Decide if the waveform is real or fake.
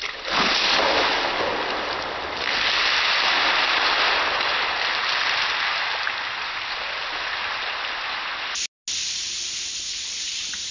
real